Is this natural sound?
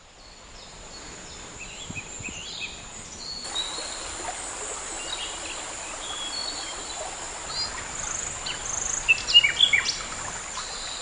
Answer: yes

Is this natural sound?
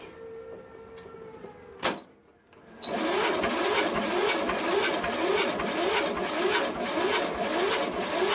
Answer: yes